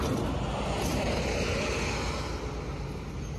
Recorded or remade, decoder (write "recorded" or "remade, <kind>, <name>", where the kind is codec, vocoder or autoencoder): recorded